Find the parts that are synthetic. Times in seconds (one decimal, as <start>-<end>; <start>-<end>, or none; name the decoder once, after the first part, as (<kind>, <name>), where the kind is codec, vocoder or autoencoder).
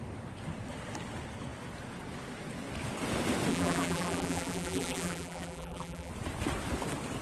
3.5-6.1 (vocoder, BigVGAN v2)